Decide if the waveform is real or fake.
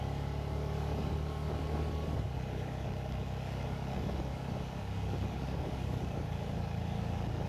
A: fake